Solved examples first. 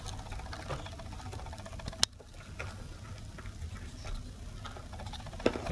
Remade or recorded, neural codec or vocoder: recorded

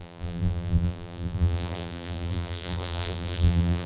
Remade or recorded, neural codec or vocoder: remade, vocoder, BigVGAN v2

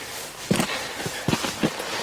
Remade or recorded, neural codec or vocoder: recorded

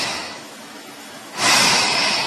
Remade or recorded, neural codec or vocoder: remade, autoencoder, DAC-VAE